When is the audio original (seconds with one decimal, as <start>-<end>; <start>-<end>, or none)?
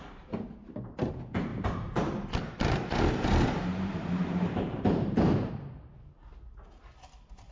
0.0-1.5; 5.5-7.5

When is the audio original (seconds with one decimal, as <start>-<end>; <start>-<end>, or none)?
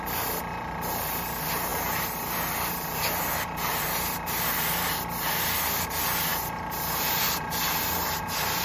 0.0-8.6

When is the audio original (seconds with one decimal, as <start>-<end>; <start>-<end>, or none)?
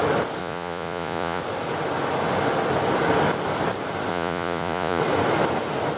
0.0-0.4; 1.4-4.1; 5.0-6.0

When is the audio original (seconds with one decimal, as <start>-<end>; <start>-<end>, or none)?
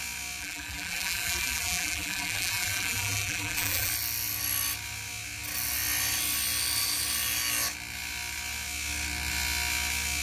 0.0-0.4; 3.9-10.2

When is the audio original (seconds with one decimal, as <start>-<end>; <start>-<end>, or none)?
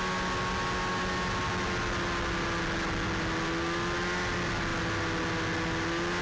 0.0-6.2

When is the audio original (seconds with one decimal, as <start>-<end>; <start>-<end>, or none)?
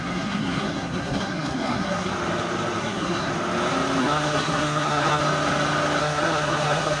2.1-2.8; 3.3-4.0; 5.2-6.0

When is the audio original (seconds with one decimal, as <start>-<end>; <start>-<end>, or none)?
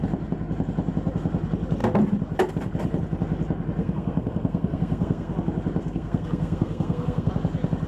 0.0-3.8; 5.3-5.8; 7.3-7.9